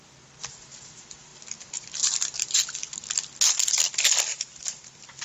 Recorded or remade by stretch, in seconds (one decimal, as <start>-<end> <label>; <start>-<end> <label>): 0.0-4.3 recorded; 4.3-5.2 remade